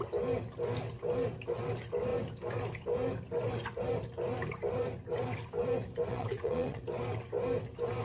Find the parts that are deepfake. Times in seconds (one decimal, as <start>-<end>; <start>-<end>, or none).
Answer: 6.1-6.8